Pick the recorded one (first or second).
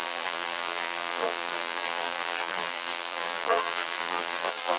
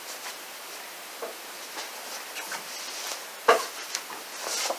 second